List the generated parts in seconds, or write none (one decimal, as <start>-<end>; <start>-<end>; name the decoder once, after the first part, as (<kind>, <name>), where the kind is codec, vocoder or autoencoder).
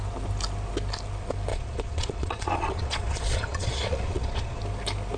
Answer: 1.5-4.6 (vocoder, Vocos)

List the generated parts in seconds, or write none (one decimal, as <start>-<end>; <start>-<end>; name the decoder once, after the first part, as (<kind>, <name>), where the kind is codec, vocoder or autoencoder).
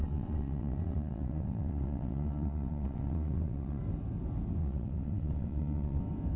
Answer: 0.0-3.8 (vocoder, WaveNeXt); 4.6-6.0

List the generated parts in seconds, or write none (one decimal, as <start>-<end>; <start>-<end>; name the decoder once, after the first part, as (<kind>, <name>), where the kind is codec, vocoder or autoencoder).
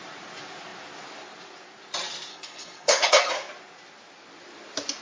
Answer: 2.3-3.3 (codec, HILCodec)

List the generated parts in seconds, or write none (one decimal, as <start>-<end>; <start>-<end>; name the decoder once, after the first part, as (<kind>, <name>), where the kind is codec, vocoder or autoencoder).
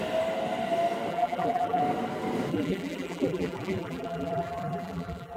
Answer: 1.1-1.8 (vocoder, BigVGAN v2); 2.5-5.4